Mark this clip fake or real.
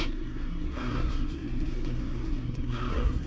fake